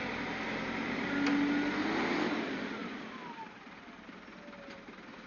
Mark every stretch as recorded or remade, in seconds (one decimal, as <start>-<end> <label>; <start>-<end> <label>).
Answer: 0.0-1.1 remade; 1.1-2.8 recorded; 2.8-4.1 remade; 4.1-5.3 recorded